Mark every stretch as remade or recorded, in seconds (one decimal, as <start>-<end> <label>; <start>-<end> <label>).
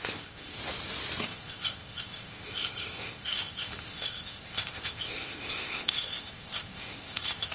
0.0-0.6 remade; 0.6-1.2 recorded; 1.2-7.5 remade